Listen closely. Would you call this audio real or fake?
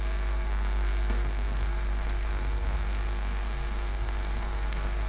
fake